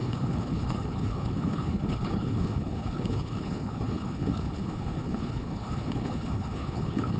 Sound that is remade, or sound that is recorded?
remade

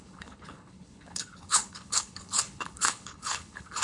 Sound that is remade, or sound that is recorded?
remade